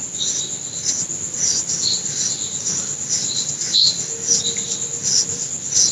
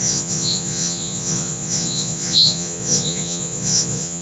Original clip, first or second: first